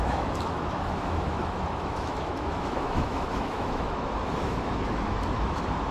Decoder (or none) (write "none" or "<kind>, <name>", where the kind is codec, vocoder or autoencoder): autoencoder, DAC-VAE